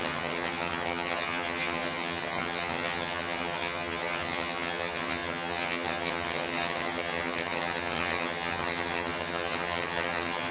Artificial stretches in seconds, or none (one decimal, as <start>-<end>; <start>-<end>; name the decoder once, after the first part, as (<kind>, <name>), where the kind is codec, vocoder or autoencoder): 0.0-10.5 (vocoder, HiFi-GAN)